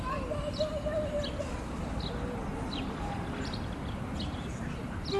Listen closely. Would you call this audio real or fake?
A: real